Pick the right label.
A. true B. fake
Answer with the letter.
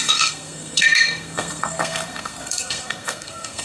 B